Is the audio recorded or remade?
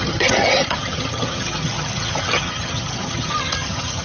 remade